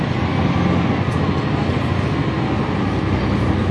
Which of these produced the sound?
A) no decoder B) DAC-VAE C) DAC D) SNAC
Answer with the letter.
A